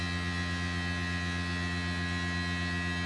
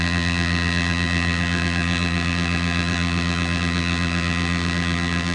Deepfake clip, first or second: second